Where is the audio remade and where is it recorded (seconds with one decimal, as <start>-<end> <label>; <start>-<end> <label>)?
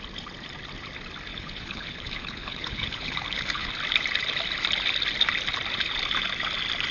0.0-1.3 recorded; 1.3-3.7 remade; 3.7-6.9 recorded